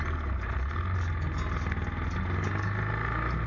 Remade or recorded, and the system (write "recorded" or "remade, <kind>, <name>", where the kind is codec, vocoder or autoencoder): recorded